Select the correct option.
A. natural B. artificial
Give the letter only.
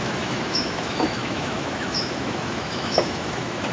B